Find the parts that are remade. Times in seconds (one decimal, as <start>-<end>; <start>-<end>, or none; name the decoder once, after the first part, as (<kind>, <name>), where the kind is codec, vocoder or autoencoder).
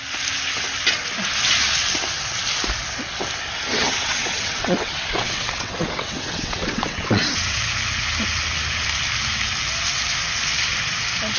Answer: 3.7-7.6 (vocoder, WaveNeXt)